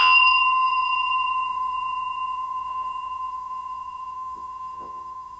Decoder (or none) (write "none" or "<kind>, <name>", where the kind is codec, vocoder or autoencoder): vocoder, Vocos